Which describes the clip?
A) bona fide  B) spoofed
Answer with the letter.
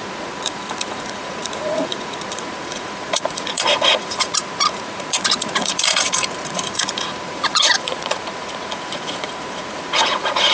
B